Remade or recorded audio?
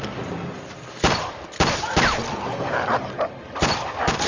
remade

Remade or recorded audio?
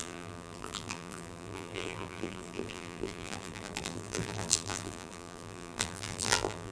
remade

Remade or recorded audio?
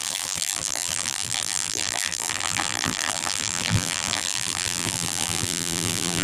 remade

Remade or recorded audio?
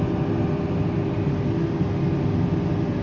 recorded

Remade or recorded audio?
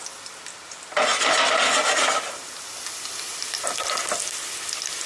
recorded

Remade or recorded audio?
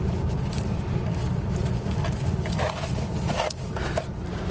remade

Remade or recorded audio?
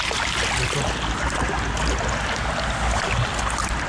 recorded